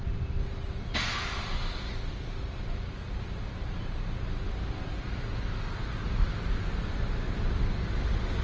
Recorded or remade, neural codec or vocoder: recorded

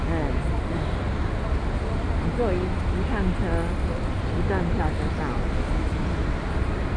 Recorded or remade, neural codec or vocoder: recorded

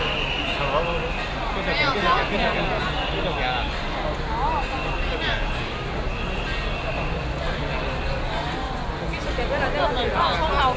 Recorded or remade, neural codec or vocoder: recorded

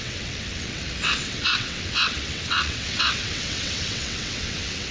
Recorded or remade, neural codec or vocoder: remade, vocoder, WaveNeXt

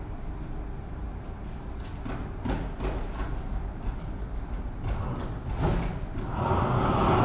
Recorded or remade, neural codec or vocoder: recorded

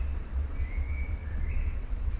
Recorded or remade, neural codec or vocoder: remade, vocoder, WaveNeXt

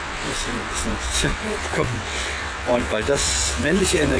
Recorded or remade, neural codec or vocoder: remade, vocoder, WaveNeXt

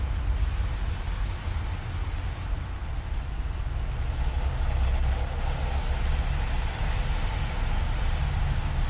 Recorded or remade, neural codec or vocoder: recorded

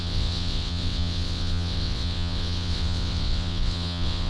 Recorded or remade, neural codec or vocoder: remade, vocoder, WaveNeXt